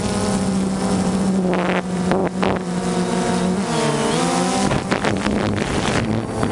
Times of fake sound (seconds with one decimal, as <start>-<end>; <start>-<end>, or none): none